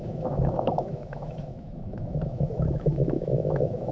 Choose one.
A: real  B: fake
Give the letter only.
B